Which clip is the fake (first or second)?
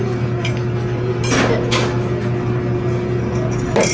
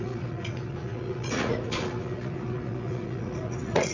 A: second